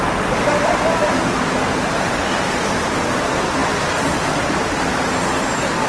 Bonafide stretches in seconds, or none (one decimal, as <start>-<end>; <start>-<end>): 0.0-1.1; 2.3-5.9